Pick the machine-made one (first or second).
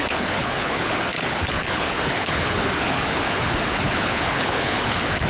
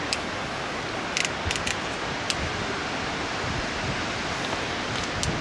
first